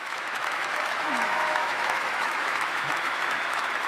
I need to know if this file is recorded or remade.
remade